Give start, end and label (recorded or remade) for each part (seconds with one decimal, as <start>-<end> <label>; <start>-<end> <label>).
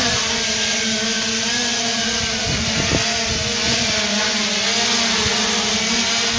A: 0.0-6.4 recorded